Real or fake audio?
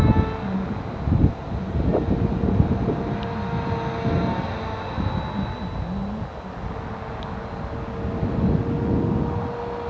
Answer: real